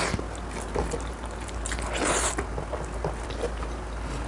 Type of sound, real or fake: real